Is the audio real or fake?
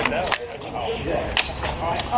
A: real